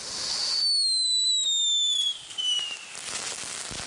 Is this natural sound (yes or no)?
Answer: yes